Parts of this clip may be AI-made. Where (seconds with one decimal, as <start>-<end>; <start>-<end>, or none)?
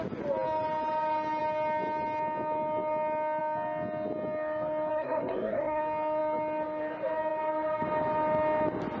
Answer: 4.9-5.8